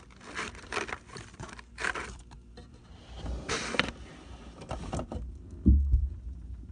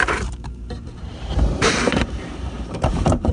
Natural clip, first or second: first